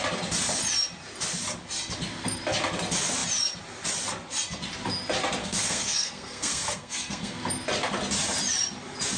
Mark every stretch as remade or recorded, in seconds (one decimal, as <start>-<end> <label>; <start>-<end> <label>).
0.0-5.4 recorded; 5.4-7.4 remade; 7.4-9.2 recorded